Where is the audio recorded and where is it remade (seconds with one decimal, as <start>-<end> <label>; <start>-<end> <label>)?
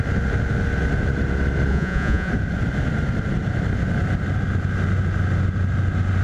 0.0-1.7 recorded; 1.7-2.3 remade; 2.3-6.2 recorded